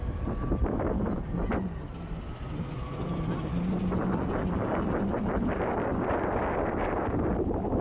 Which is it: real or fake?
real